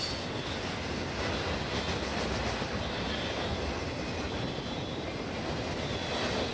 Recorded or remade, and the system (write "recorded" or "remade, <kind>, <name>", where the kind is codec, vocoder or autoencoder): recorded